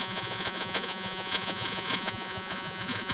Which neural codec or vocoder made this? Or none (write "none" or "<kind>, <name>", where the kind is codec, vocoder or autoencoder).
vocoder, Vocos